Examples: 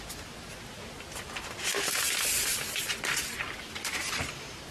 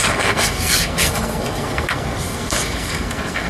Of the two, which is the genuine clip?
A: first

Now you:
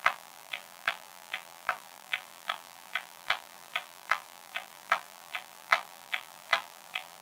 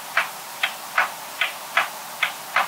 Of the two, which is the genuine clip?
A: second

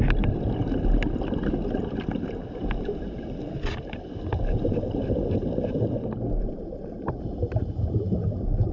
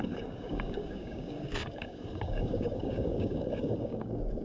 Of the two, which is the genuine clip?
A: first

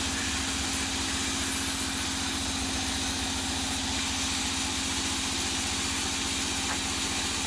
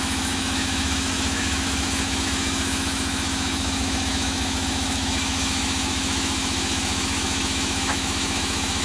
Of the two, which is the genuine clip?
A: first